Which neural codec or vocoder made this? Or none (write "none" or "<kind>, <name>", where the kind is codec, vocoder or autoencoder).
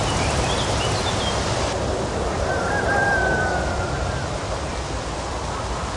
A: none